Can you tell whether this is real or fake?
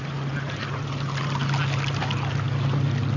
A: real